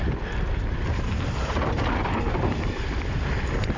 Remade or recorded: recorded